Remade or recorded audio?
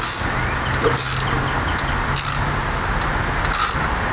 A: recorded